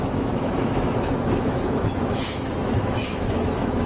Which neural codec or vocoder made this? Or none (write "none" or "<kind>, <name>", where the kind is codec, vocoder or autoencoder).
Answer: autoencoder, DAC-VAE